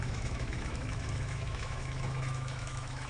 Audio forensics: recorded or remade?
remade